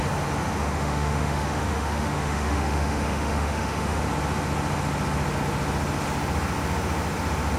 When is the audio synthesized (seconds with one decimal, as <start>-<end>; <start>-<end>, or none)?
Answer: 0.6-4.0